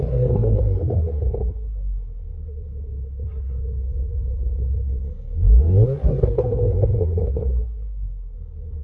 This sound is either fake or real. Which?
fake